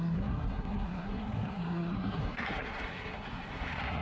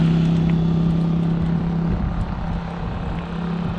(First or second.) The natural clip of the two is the second